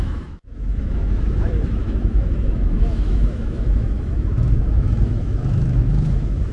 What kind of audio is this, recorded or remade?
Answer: remade